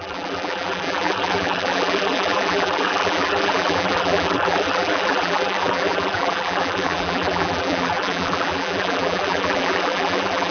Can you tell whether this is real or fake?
fake